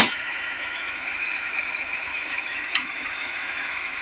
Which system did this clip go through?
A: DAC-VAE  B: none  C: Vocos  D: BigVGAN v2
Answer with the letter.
A